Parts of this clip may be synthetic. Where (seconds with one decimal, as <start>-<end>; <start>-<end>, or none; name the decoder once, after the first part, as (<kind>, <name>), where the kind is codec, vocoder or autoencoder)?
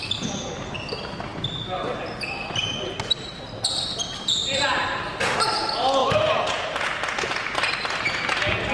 4.4-5.0 (vocoder, BigVGAN v2); 6.0-8.1